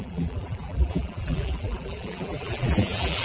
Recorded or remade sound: remade